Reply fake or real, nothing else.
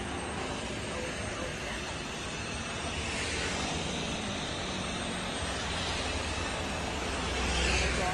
real